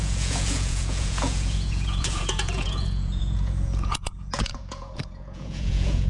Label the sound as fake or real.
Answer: fake